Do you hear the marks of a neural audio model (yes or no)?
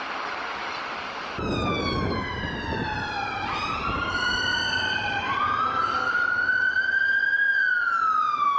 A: no